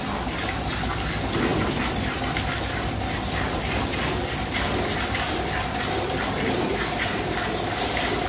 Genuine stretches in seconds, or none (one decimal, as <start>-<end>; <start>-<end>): 0.0-8.3